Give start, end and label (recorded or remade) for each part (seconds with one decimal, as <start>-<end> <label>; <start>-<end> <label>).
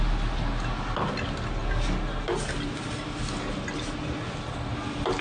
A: 0.0-5.2 recorded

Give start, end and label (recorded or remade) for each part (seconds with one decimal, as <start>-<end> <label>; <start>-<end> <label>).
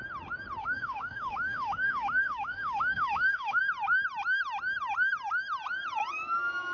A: 0.0-0.6 recorded; 0.6-3.6 remade; 3.6-6.7 recorded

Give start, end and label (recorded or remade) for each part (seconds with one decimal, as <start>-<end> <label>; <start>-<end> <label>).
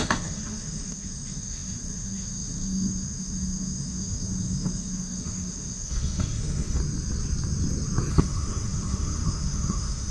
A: 0.0-6.8 remade; 6.8-8.1 recorded; 8.1-10.1 remade